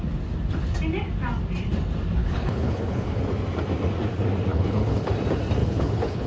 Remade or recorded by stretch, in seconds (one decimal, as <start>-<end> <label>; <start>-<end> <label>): 0.0-2.2 recorded; 2.2-3.2 remade; 3.2-4.5 recorded; 4.5-5.1 remade; 5.1-5.6 recorded; 5.6-6.3 remade